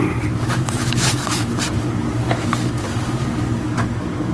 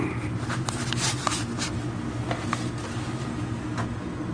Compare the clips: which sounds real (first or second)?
second